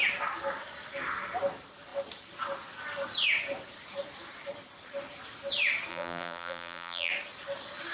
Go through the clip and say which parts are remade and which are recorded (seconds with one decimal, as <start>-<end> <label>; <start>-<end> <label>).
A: 0.0-5.9 recorded; 5.9-7.1 remade; 7.1-7.9 recorded